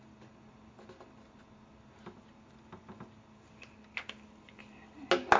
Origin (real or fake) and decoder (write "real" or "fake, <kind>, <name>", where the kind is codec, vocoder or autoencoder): real